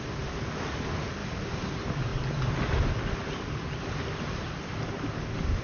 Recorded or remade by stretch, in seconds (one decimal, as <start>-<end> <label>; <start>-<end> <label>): 0.0-1.2 recorded; 1.2-1.7 remade; 1.7-5.6 recorded